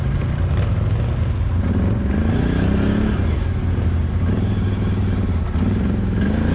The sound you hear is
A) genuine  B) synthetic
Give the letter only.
A